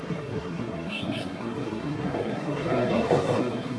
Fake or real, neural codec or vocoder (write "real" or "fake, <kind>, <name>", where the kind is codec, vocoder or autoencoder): fake, codec, SNAC